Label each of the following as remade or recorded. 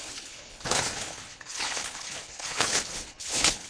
remade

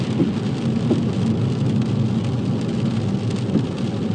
recorded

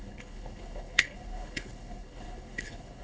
remade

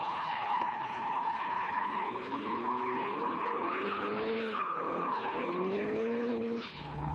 remade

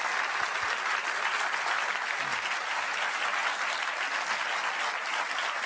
recorded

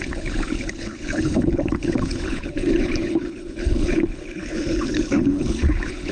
remade